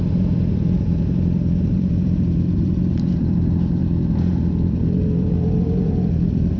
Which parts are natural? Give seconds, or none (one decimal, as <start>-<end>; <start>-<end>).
3.8-4.5